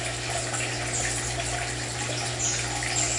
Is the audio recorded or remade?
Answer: recorded